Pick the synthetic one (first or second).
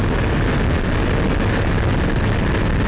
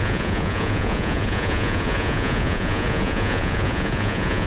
second